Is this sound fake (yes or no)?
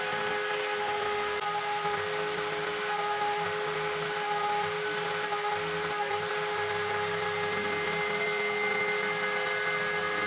no